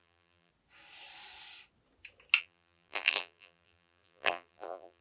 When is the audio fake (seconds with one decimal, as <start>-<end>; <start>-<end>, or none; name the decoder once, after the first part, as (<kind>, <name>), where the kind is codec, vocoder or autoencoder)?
0.0-0.5 (vocoder, BigVGAN v2); 2.4-5.0